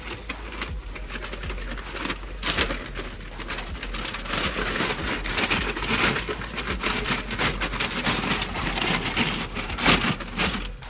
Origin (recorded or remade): recorded